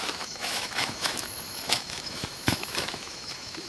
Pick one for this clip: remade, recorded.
remade